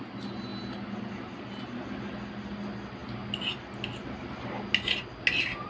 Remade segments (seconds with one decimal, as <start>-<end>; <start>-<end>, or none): none